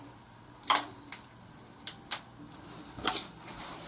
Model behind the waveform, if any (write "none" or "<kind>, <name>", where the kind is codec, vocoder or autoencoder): vocoder, BigVGAN v2